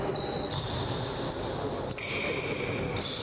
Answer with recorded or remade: recorded